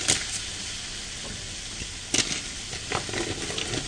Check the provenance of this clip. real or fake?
real